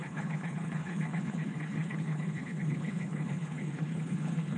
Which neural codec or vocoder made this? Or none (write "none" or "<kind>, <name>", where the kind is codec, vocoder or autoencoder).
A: codec, HILCodec